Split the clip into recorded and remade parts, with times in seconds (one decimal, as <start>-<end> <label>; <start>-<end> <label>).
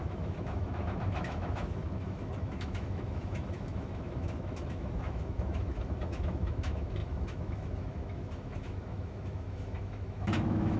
0.0-10.8 remade